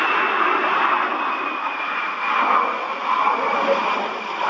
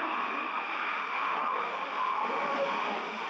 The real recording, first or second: first